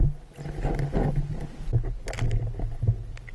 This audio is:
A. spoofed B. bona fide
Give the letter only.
B